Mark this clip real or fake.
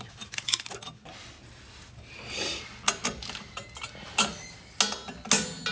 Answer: real